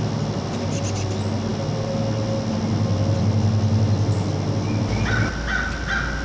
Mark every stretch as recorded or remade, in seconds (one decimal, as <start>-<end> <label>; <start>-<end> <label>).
0.0-6.2 recorded